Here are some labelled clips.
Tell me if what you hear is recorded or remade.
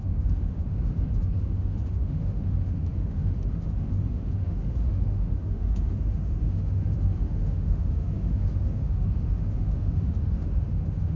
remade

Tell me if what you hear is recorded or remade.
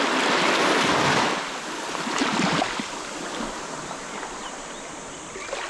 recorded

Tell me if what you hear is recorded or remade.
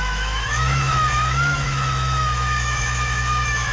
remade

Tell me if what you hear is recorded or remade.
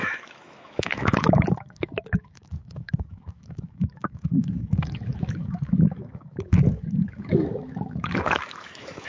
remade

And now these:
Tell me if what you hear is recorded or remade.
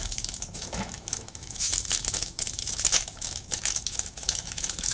remade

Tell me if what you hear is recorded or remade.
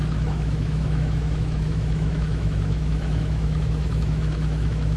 remade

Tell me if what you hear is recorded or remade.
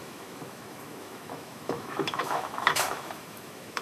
remade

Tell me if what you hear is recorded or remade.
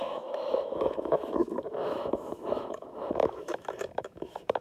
remade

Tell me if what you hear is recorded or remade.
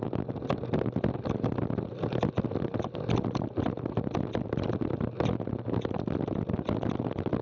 recorded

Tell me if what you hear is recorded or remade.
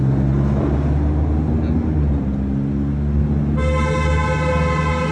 recorded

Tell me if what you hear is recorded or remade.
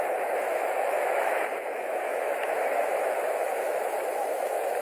remade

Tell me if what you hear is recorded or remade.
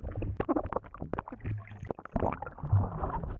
recorded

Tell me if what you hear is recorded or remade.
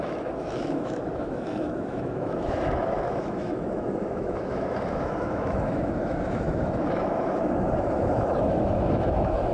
remade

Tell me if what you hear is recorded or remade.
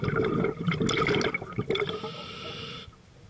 recorded